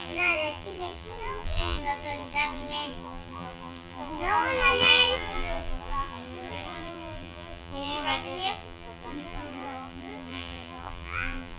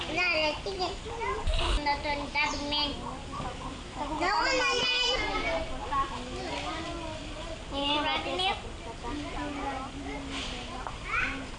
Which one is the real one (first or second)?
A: second